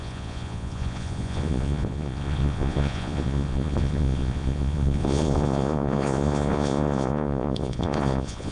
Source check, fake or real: fake